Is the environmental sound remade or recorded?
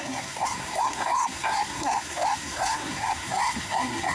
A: remade